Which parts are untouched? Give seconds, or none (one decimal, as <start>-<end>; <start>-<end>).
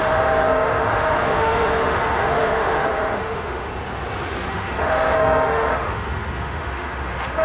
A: 3.7-4.5